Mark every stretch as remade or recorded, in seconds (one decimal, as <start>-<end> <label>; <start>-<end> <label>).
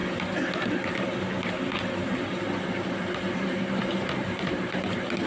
0.0-5.3 recorded